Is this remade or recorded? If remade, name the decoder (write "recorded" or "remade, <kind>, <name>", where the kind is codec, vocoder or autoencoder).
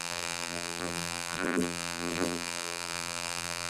remade, vocoder, BigVGAN v2